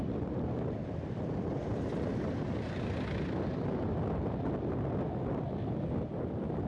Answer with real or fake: real